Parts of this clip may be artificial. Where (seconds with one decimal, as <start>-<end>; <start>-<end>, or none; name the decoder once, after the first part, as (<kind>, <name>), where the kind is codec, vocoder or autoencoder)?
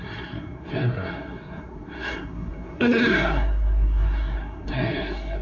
0.0-5.4 (codec, SNAC)